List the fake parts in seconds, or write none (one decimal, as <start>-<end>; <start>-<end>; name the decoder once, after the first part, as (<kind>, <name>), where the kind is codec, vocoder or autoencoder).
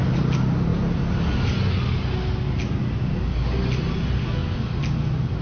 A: none